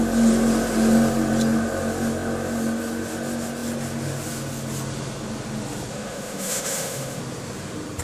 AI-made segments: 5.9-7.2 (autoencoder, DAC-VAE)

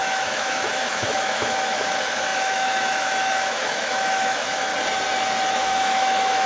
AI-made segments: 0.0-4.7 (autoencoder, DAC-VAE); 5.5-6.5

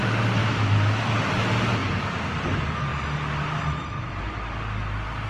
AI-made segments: 0.4-1.1 (autoencoder, DAC-VAE)

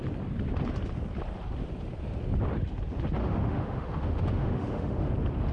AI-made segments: 3.2-5.1 (autoencoder, DAC-VAE)

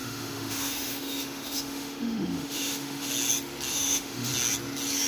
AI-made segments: 0.0-3.1 (autoencoder, DAC-VAE); 3.7-4.3

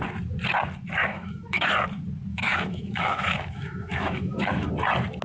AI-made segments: 1.0-1.7 (autoencoder, DAC-VAE); 2.3-4.7